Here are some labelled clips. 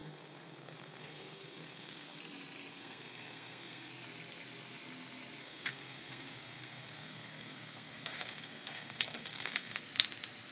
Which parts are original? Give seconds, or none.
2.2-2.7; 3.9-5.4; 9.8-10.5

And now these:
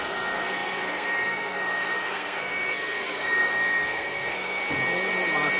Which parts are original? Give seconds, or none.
4.6-5.6

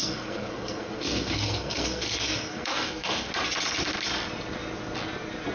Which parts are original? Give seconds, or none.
3.3-5.5

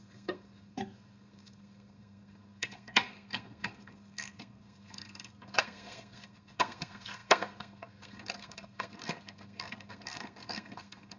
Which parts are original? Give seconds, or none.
none

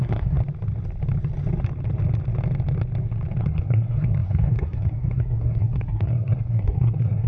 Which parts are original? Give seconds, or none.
0.4-3.4

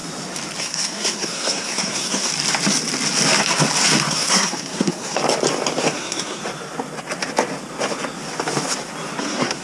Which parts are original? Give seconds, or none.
0.0-0.6; 2.3-4.1; 5.2-5.8; 6.4-9.2

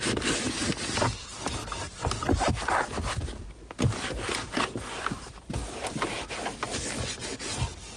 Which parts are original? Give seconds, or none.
0.0-8.0

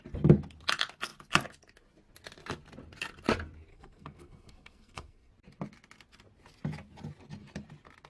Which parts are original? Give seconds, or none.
0.0-3.7; 5.3-8.1